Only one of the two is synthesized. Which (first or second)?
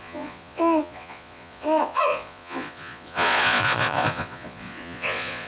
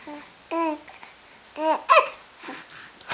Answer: first